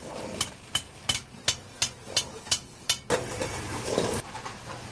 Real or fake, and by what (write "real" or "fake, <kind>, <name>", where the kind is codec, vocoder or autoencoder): real